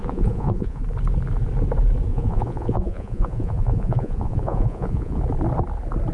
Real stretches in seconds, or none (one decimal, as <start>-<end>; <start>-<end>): 0.8-2.1; 5.2-6.1